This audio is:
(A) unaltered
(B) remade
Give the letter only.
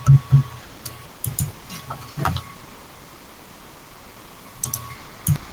A